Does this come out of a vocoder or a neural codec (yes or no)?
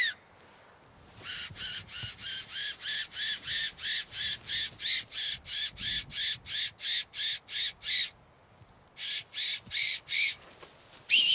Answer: no